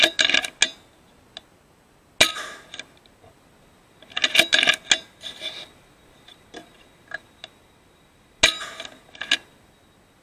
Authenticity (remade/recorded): recorded